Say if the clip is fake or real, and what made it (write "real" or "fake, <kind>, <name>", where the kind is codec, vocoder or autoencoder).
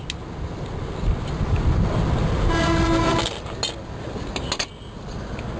real